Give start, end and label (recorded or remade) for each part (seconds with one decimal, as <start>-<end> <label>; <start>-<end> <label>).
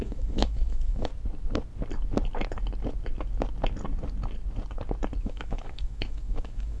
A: 0.0-1.1 remade; 1.1-5.2 recorded; 5.2-6.8 remade